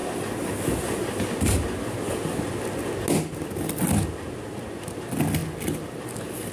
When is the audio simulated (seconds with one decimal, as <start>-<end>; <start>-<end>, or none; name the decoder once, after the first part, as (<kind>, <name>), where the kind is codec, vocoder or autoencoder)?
none